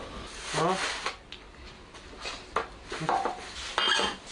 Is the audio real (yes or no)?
yes